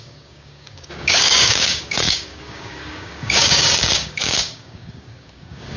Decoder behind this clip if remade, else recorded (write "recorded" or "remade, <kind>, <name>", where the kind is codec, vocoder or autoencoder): remade, codec, DAC